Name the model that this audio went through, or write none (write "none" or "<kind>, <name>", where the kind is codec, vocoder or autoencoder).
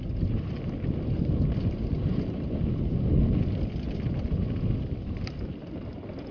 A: none